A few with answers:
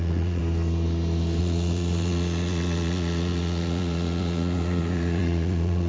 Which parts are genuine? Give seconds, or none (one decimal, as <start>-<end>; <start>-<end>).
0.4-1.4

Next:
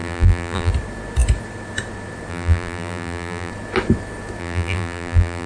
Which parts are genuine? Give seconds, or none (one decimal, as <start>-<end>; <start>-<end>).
0.7-2.3; 3.5-4.4

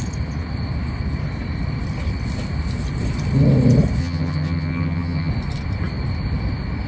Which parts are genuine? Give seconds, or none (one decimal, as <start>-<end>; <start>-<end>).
0.0-4.0; 5.3-6.9

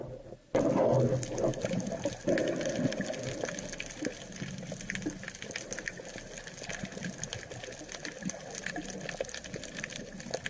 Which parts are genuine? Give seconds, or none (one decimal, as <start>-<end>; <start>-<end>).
0.0-10.5